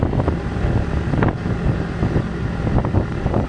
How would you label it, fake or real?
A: real